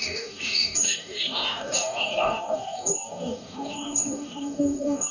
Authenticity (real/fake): fake